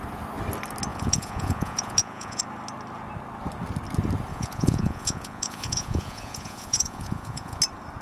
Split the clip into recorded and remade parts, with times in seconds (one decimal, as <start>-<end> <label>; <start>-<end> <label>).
0.0-0.9 recorded; 0.9-2.4 remade; 2.4-4.3 recorded; 4.3-7.6 remade; 7.6-8.0 recorded